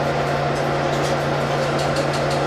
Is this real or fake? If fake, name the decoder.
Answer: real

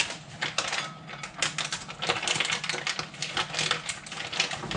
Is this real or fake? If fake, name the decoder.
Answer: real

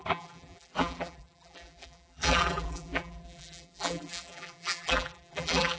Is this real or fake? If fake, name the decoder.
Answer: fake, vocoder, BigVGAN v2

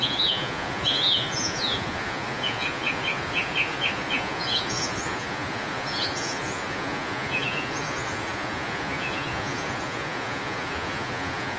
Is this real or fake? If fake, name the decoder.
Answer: fake, vocoder, Vocos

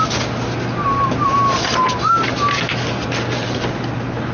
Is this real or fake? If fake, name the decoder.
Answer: real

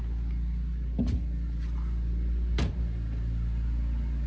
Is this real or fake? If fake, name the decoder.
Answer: real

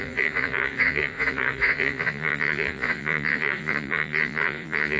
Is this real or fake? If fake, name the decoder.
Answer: fake, vocoder, Vocos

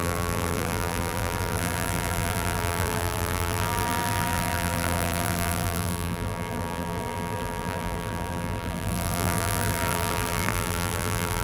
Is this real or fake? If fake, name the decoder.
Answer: fake, vocoder, BigVGAN v2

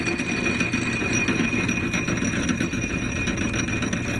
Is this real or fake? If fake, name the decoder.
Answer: real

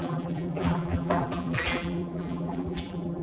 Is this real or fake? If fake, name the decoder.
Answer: fake, vocoder, BigVGAN v2